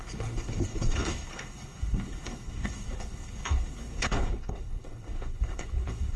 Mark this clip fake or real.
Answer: fake